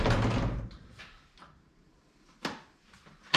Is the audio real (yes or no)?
yes